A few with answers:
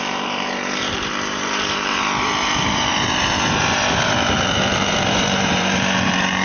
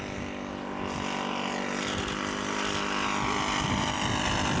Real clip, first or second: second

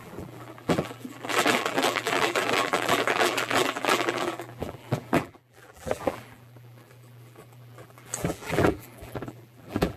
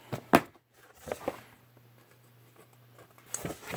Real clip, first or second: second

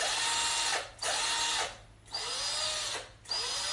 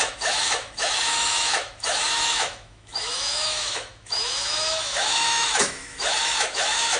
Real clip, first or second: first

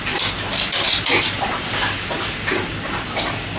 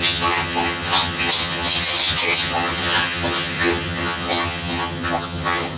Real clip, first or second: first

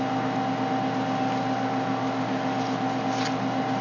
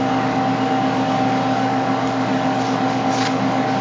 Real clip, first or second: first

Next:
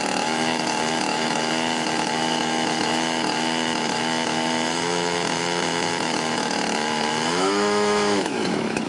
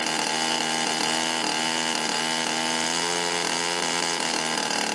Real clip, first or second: second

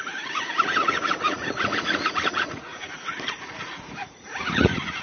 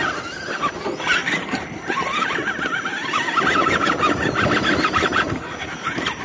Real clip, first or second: second